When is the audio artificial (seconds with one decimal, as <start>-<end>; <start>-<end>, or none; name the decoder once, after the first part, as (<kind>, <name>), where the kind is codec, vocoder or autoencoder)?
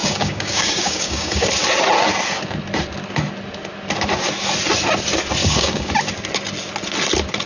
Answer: 0.0-1.5 (codec, DAC); 5.4-5.9